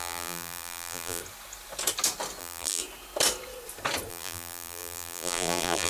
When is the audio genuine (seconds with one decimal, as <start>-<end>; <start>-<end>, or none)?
1.2-2.4; 2.8-4.1